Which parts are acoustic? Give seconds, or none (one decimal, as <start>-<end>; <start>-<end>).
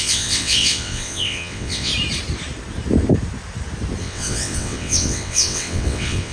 1.9-4.0